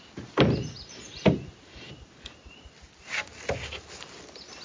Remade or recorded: recorded